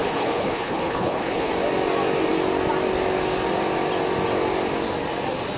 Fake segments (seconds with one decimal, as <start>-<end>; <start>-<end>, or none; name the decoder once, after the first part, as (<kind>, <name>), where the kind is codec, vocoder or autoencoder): 0.0-1.5 (codec, HILCodec)